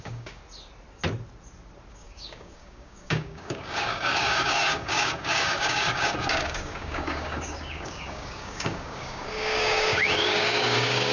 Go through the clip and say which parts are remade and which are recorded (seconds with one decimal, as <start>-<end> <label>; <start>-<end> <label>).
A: 0.0-0.4 remade; 0.4-1.9 recorded; 1.9-11.1 remade